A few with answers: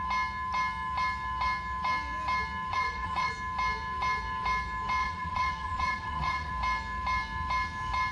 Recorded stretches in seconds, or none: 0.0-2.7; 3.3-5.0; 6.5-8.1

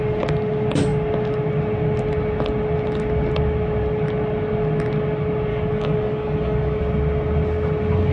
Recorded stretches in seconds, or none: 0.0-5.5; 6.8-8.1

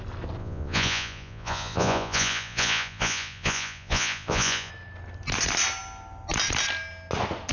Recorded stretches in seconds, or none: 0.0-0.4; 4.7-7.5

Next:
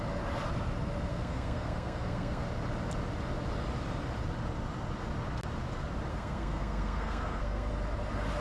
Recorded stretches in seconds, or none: 0.0-1.1; 2.4-6.1; 7.7-8.4

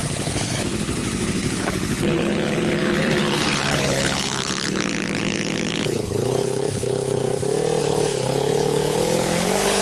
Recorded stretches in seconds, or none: 7.2-7.8

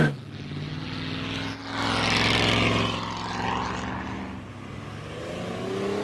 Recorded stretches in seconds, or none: 0.0-6.0

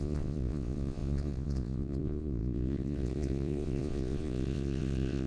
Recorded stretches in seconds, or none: none

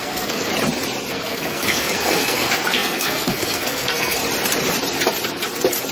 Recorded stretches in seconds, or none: 0.5-1.1; 4.2-5.9